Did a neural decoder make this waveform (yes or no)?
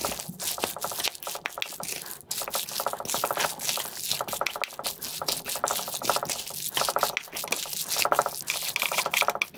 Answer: no